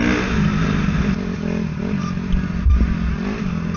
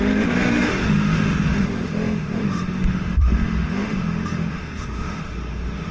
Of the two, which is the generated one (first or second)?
second